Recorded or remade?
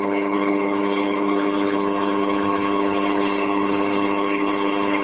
remade